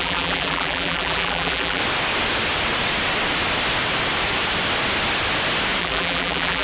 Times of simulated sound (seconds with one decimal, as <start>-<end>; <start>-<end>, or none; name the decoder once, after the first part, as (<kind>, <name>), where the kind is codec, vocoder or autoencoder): 0.0-1.8 (vocoder, BigVGAN v2); 5.8-6.6